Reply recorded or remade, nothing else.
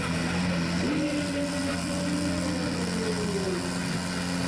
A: recorded